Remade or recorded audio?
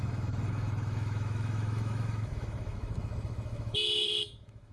remade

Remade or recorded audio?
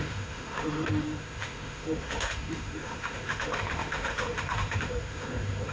remade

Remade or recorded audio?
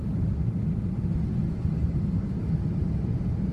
recorded